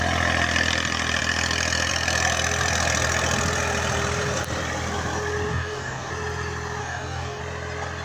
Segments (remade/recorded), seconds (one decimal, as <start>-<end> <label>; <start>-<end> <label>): 0.0-5.5 recorded; 5.5-6.1 remade; 6.1-6.8 recorded; 6.8-7.4 remade; 7.4-8.0 recorded